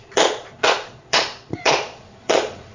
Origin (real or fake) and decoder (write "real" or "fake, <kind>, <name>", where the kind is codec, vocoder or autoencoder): fake, vocoder, Vocos